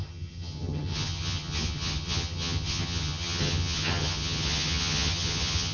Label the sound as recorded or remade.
remade